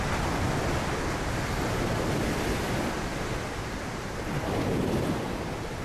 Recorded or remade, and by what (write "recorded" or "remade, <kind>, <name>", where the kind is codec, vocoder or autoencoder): recorded